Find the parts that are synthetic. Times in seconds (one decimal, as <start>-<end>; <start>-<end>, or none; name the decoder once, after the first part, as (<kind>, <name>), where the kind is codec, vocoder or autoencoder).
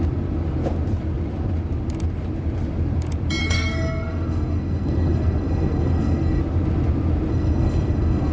3.4-6.4 (codec, SNAC); 7.3-8.3